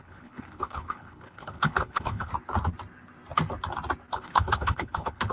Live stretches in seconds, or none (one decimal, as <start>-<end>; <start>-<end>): 2.3-4.1